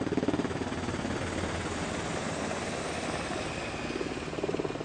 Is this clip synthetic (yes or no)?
no